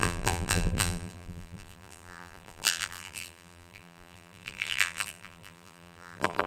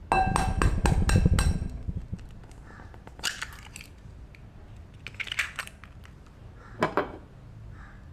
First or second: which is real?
second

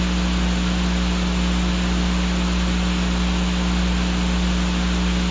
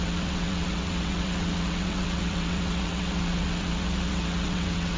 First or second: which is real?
first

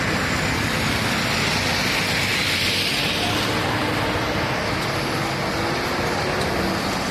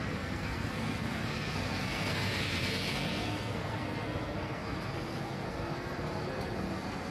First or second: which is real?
first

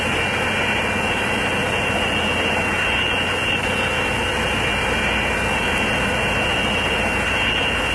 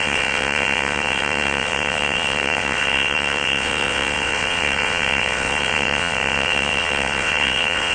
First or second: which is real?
first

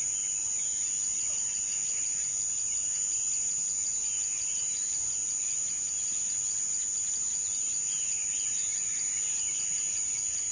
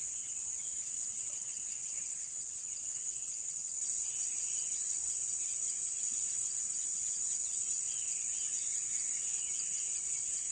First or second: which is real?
first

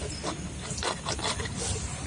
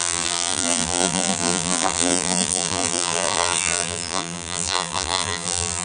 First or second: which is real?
first